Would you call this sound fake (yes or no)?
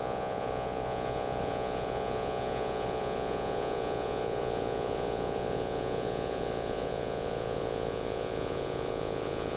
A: yes